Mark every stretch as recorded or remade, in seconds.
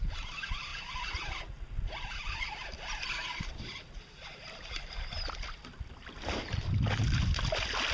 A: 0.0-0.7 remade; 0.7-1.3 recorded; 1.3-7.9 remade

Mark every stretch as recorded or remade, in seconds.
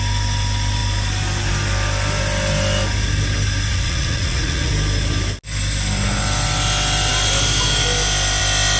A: 0.0-3.7 recorded; 3.7-4.7 remade; 4.7-8.8 recorded